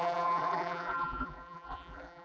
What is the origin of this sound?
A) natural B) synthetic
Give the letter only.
B